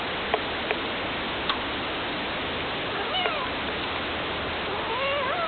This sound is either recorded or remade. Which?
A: recorded